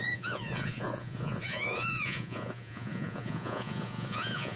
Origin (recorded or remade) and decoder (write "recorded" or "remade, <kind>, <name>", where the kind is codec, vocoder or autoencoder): remade, vocoder, Vocos